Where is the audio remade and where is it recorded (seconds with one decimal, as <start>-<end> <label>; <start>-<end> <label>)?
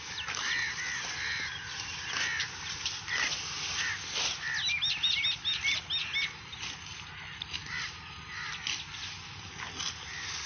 0.0-10.5 recorded